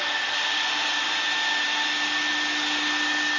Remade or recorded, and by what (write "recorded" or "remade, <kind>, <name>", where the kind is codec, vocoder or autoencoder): recorded